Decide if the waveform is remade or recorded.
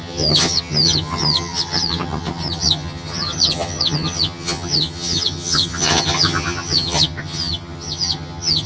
remade